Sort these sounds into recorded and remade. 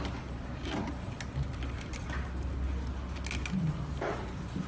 recorded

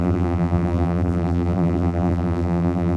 remade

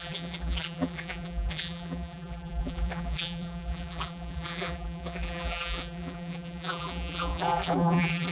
remade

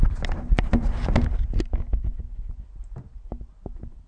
recorded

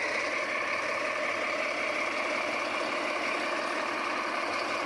recorded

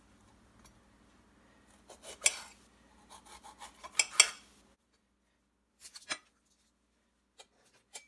recorded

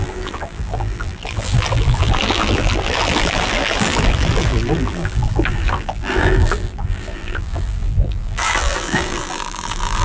remade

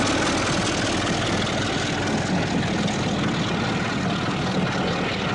recorded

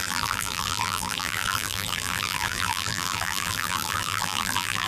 remade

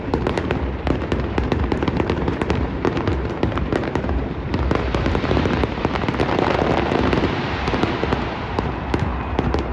remade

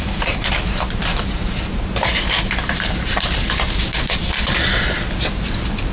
remade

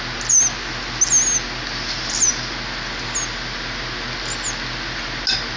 recorded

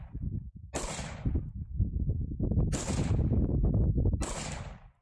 recorded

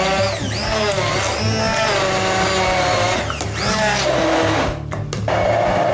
recorded